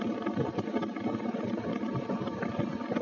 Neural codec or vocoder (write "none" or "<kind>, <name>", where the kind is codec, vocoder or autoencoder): none